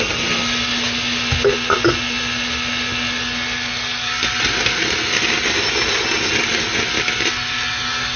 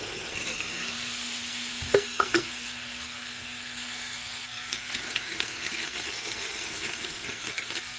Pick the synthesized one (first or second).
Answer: second